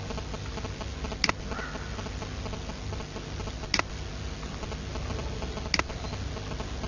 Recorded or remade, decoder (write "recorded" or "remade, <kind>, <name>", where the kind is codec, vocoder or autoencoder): recorded